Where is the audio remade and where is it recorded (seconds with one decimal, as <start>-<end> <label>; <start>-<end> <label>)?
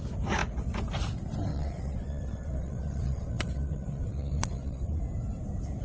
0.0-1.5 recorded; 1.5-5.0 remade; 5.0-5.8 recorded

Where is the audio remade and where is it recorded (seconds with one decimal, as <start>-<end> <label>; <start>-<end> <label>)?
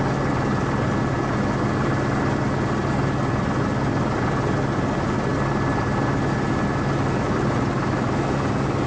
0.0-8.9 recorded